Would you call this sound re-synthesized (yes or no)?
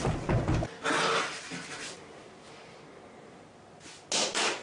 no